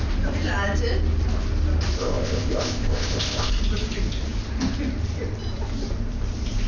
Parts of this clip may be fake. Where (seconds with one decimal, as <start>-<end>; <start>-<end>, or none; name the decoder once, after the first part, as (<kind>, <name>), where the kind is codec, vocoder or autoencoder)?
2.0-3.5 (codec, ZipCodec)